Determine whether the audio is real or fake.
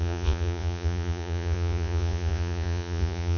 fake